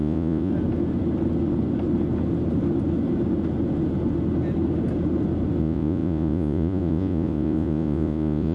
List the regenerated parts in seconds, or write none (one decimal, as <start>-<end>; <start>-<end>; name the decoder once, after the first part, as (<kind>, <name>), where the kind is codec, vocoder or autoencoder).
0.0-0.5 (vocoder, Vocos); 5.6-8.5